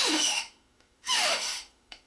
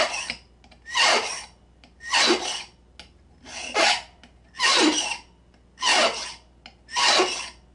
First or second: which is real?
second